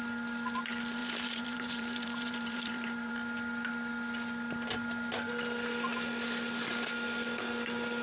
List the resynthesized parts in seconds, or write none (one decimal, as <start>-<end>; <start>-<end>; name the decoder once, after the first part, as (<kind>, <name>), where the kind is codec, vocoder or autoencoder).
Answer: 1.0-3.1 (vocoder, BigVGAN v2)